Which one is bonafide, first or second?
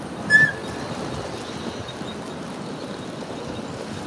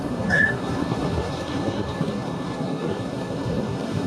first